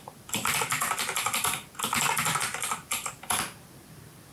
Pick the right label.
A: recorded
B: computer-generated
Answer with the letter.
B